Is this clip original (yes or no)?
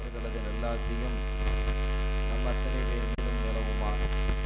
yes